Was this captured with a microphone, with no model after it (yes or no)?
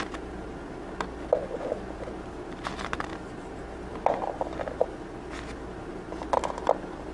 yes